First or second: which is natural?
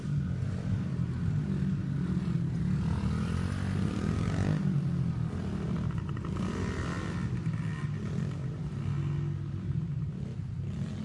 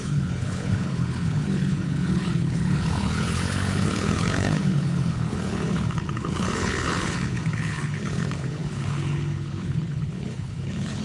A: first